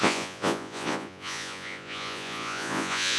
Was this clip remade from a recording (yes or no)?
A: yes